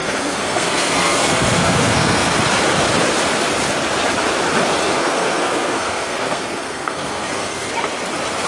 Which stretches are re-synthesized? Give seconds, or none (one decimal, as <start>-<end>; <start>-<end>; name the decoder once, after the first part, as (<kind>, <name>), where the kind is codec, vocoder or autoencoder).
0.0-2.3 (codec, SNAC); 4.8-7.7

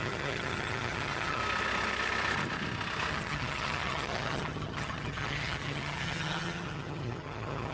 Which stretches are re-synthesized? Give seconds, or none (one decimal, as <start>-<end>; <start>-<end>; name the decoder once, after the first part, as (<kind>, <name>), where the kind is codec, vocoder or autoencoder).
0.0-1.4 (vocoder, HiFi-GAN); 3.1-7.7

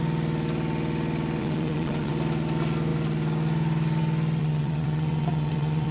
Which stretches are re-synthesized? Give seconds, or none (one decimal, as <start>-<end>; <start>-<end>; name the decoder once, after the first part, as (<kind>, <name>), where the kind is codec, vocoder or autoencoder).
1.4-2.1 (vocoder, WaveNeXt); 4.4-5.9

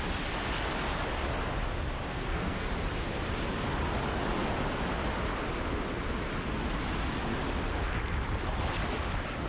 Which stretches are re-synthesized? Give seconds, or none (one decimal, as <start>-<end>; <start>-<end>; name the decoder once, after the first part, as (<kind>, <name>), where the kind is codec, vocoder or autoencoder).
2.1-2.7 (codec, SNAC)

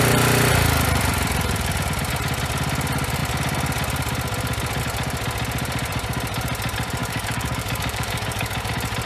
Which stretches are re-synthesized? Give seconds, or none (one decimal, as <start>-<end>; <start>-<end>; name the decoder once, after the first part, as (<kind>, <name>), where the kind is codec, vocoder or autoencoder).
7.0-8.7 (codec, DAC)